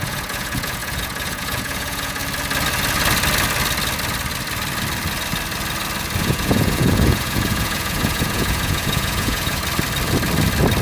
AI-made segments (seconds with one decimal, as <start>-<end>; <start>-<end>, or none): 0.0-2.2; 6.2-9.6